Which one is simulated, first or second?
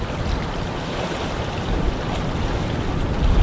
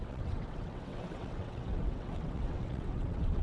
second